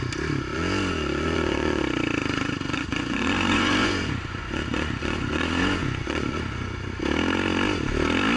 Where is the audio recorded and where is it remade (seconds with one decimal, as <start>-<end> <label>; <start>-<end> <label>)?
0.0-0.5 recorded; 0.5-1.8 remade; 1.8-2.2 recorded; 2.2-6.9 remade; 6.9-8.4 recorded